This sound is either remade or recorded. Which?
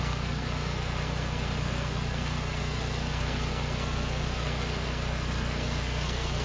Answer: remade